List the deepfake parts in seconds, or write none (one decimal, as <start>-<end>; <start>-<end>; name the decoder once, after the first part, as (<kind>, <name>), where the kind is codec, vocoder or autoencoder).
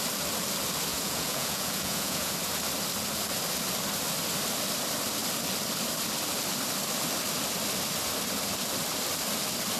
0.9-2.3 (vocoder, Vocos)